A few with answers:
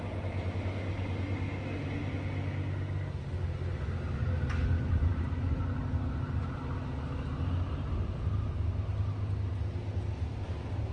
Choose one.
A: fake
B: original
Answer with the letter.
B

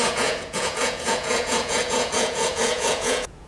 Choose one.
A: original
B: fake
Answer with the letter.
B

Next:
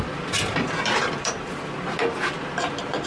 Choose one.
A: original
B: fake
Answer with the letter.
A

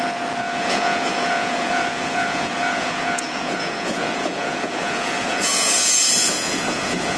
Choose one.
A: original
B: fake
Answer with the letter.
B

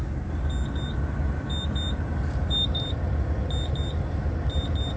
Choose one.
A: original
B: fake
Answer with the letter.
A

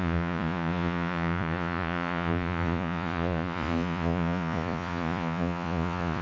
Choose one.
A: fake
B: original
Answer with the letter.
A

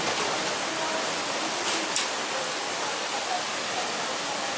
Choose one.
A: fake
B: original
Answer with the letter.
B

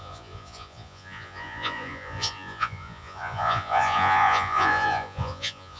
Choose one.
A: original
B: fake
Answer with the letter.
B